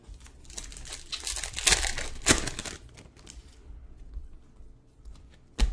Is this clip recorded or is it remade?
recorded